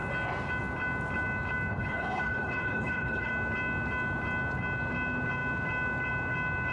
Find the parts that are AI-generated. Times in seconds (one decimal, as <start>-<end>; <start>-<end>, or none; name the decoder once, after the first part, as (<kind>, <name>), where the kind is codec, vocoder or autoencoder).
1.7-3.3 (codec, HILCodec)